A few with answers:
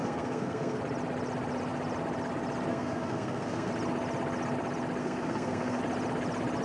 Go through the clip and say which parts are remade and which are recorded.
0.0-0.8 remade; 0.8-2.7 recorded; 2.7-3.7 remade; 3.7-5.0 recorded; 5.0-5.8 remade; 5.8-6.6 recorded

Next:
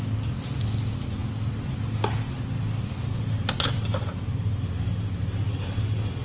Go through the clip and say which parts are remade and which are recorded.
0.0-6.2 recorded

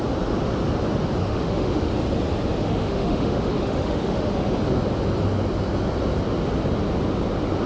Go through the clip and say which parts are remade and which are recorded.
0.0-1.2 recorded; 1.2-1.9 remade; 1.9-2.6 recorded; 2.6-4.3 remade; 4.3-7.7 recorded